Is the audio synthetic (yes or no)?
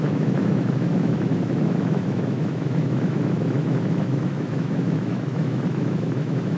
yes